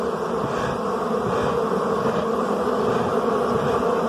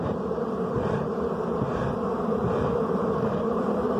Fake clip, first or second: second